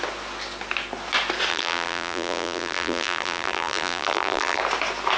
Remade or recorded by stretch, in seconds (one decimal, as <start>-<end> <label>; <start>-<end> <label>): 0.0-1.5 recorded; 1.5-4.6 remade; 4.6-5.2 recorded